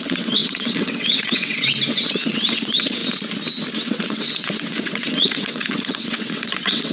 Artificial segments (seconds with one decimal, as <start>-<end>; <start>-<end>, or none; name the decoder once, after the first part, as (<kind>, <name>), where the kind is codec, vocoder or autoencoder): 0.0-3.0 (vocoder, WaveNeXt); 3.7-6.9